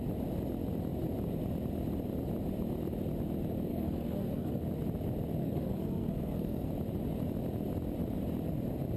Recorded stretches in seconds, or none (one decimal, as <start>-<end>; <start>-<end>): 0.0-3.7; 4.6-5.4; 6.7-9.0